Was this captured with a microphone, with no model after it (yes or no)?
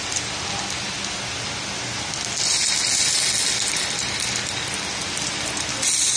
yes